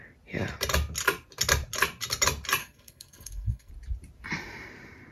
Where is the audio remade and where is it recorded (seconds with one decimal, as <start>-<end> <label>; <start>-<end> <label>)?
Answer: 0.0-2.6 recorded; 2.6-3.7 remade; 3.7-5.1 recorded